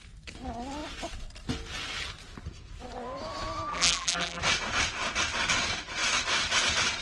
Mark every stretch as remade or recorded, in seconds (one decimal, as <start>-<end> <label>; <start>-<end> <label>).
0.0-3.7 recorded; 3.7-4.4 remade; 4.4-7.0 recorded